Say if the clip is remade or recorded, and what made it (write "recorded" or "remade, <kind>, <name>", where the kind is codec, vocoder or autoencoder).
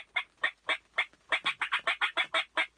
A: recorded